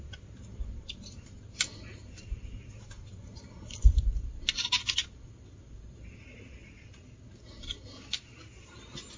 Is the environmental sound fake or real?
real